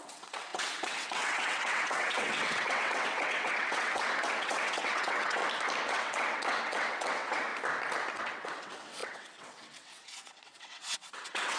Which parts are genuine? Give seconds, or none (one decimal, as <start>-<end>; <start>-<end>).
5.4-5.9; 7.5-8.1